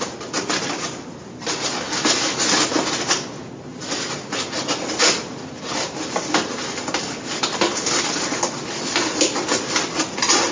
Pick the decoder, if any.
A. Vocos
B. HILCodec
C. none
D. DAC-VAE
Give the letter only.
C